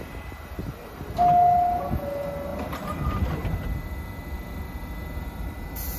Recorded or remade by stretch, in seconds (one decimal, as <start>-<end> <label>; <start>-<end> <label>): 0.0-6.0 recorded

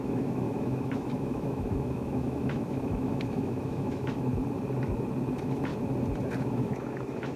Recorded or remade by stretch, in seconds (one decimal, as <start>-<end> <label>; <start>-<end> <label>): 0.0-4.3 remade; 4.3-5.3 recorded; 5.3-5.7 remade; 5.7-6.4 recorded; 6.4-7.4 remade